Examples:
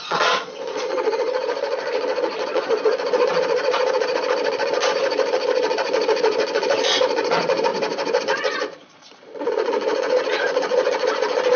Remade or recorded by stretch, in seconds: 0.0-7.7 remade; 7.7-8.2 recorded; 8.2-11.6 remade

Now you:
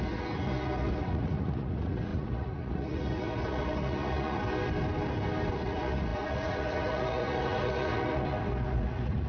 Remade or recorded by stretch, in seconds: 0.0-4.4 remade; 4.4-5.5 recorded; 5.5-9.3 remade

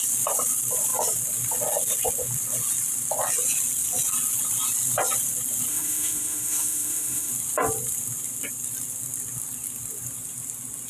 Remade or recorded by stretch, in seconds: 0.0-5.7 recorded; 5.7-7.3 remade; 7.3-10.9 recorded